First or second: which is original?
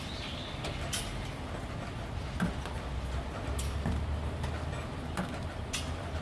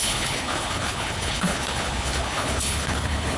first